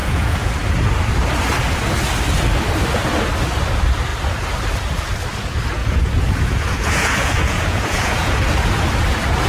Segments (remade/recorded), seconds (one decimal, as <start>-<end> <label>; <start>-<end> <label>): 0.0-0.5 remade; 0.5-5.8 recorded; 5.8-8.4 remade; 8.4-9.5 recorded